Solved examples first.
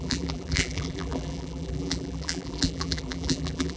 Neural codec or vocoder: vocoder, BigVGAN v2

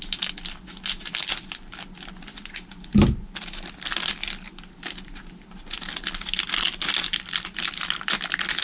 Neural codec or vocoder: none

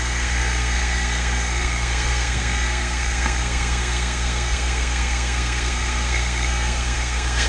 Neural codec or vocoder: codec, SNAC